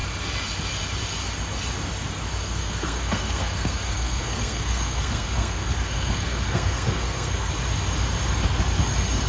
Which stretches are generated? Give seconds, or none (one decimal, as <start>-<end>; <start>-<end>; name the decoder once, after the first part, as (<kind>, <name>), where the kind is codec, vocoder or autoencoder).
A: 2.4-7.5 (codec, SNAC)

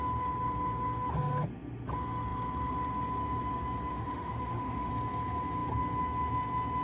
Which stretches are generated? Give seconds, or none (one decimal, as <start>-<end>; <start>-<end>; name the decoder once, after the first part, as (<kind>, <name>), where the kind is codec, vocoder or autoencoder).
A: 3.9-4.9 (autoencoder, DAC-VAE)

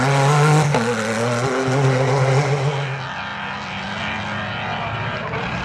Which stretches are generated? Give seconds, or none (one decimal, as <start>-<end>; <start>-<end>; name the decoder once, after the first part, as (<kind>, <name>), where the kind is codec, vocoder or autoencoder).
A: none